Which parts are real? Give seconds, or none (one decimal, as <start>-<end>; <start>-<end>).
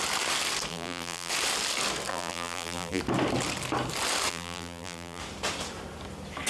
0.0-0.7; 1.3-2.1; 3.0-4.3; 5.2-6.5